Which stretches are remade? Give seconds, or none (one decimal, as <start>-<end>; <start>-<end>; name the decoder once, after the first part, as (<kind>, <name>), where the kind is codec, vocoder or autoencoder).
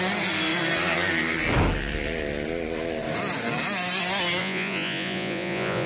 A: 4.4-5.9 (vocoder, Vocos)